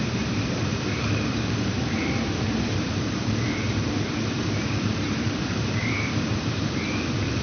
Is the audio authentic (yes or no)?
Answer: no